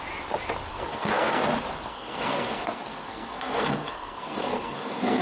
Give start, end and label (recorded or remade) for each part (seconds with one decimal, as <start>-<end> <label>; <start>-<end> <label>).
0.0-0.7 recorded; 0.7-1.4 remade; 1.4-1.9 recorded; 1.9-5.2 remade